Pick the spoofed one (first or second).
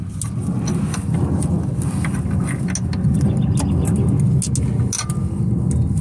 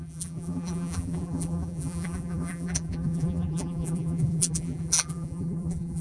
second